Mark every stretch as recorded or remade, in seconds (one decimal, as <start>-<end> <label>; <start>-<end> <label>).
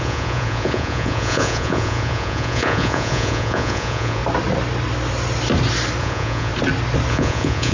0.0-4.2 remade; 4.2-6.0 recorded; 6.0-6.5 remade; 6.5-7.1 recorded; 7.1-7.7 remade